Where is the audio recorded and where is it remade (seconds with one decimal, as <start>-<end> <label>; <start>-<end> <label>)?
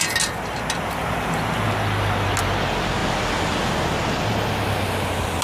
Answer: 0.0-5.4 recorded